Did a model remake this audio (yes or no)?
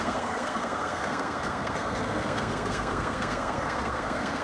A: yes